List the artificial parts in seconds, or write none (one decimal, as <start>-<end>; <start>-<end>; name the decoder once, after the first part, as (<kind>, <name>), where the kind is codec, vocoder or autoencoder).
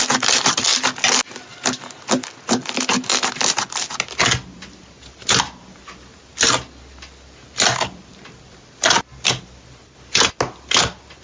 none